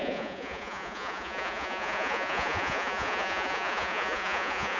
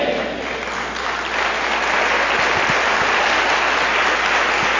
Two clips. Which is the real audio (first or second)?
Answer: second